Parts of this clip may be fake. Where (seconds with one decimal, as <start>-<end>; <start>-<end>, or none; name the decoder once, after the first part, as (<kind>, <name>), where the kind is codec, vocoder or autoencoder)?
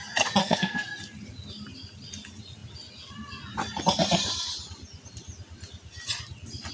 0.4-0.9 (codec, SNAC)